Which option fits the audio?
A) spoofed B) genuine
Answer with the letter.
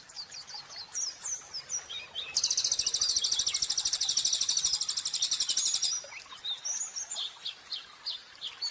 B